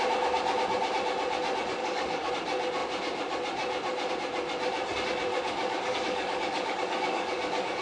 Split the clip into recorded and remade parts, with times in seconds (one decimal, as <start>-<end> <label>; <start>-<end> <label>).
0.0-1.8 recorded; 1.8-2.3 remade; 2.3-5.3 recorded; 5.3-7.8 remade